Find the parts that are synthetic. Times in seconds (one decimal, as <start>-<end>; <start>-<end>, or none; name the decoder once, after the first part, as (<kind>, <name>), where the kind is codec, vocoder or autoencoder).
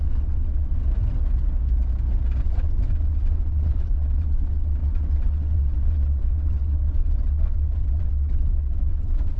0.0-0.8 (vocoder, WaveNeXt); 2.4-9.4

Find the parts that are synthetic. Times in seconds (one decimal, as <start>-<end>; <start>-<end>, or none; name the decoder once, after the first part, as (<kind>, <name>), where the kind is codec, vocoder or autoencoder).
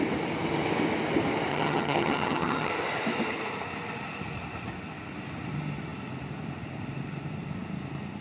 1.5-2.7 (vocoder, HiFi-GAN)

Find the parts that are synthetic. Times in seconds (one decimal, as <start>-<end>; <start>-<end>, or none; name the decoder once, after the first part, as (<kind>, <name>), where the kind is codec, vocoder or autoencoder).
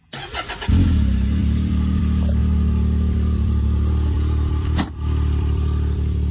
1.4-2.0 (vocoder, BigVGAN v2); 2.4-6.3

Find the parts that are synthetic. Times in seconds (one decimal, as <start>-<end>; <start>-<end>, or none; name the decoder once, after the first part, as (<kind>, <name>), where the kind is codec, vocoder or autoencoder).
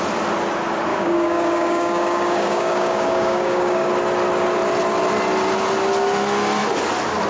0.9-3.9 (codec, DAC)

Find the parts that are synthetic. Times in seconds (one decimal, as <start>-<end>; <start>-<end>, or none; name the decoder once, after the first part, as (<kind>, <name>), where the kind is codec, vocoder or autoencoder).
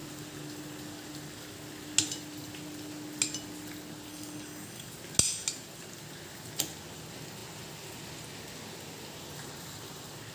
4.1-4.9 (codec, DAC)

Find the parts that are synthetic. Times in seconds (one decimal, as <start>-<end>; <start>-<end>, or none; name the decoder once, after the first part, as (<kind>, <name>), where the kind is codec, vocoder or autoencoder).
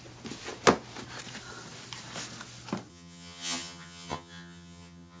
2.9-5.2 (vocoder, HiFi-GAN)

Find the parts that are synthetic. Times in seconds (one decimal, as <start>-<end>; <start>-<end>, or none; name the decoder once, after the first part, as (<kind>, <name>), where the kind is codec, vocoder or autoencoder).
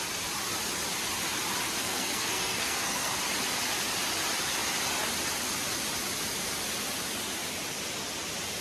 1.8-3.2 (codec, SNAC)